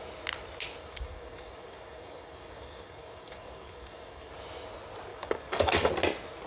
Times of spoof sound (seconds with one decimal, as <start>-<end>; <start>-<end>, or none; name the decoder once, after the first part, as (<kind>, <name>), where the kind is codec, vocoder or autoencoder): 0.8-4.3 (codec, DAC); 5.1-5.9